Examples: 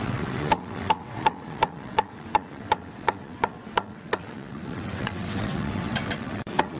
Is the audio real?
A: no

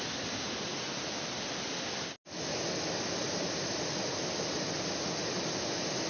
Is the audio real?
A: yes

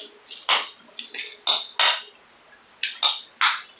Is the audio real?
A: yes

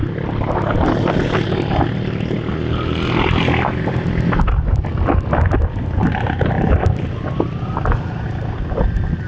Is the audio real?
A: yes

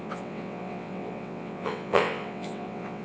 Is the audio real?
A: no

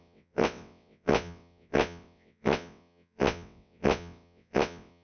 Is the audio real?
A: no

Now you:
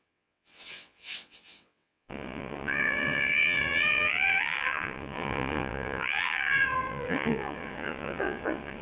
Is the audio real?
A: no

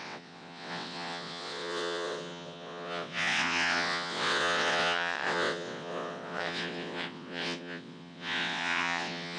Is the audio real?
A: no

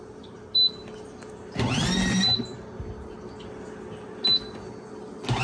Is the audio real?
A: yes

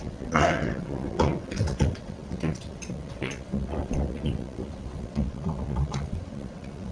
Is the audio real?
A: no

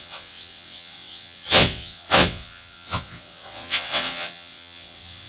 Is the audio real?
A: no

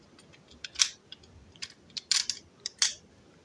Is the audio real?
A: yes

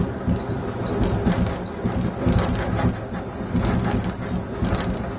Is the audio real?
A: yes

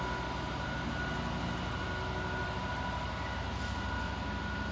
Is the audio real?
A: yes